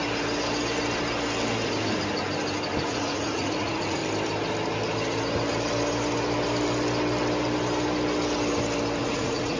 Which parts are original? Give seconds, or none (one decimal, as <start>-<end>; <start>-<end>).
0.0-2.8; 4.0-9.0